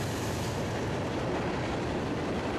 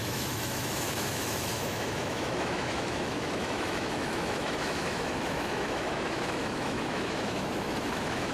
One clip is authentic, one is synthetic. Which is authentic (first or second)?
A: first